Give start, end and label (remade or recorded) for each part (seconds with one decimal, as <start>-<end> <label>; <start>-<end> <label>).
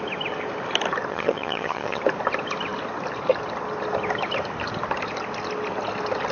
0.0-1.1 recorded; 1.1-2.0 remade; 2.0-6.3 recorded